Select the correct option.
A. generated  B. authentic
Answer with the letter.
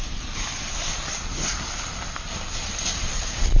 B